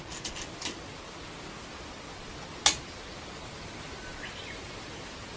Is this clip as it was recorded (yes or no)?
yes